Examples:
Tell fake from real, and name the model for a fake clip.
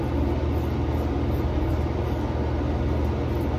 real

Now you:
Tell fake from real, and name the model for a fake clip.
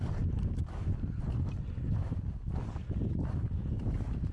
real